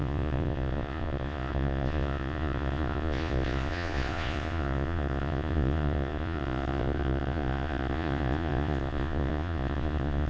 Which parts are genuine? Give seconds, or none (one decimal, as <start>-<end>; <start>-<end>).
none